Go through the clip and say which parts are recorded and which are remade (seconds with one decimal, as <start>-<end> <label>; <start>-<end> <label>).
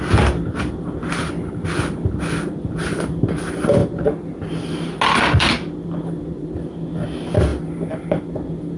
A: 0.0-8.8 recorded